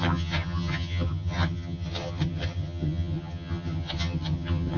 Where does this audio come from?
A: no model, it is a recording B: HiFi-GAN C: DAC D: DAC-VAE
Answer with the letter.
B